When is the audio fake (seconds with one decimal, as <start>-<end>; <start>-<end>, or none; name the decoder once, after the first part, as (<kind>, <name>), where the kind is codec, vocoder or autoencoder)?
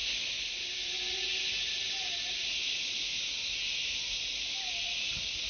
none